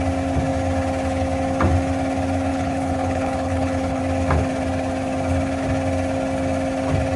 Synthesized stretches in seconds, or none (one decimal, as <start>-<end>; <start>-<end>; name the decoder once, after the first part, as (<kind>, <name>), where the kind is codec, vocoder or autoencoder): 2.5-4.0 (codec, HILCodec)